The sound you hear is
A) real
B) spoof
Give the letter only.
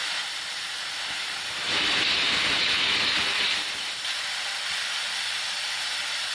A